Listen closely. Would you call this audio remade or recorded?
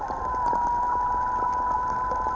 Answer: recorded